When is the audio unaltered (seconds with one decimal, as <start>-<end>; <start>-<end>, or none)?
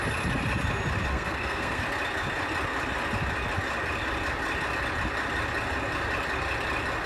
0.0-1.1; 1.8-7.1